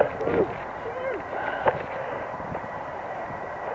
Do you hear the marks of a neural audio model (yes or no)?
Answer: no